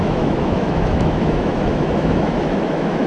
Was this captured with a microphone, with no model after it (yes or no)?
no